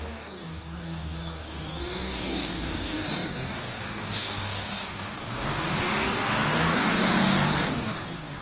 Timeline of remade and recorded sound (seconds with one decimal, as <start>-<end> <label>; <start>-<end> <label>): 0.0-8.4 remade